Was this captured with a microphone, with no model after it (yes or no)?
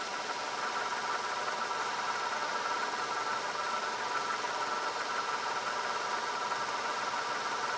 yes